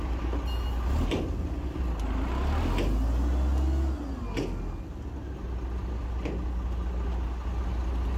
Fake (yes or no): no